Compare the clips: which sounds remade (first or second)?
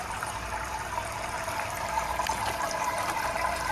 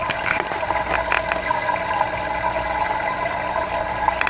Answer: first